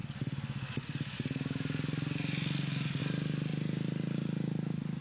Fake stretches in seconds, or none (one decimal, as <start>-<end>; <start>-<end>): none